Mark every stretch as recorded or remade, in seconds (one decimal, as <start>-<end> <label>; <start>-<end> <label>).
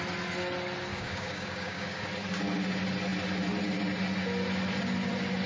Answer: 0.0-0.9 recorded; 0.9-2.0 remade; 2.0-5.5 recorded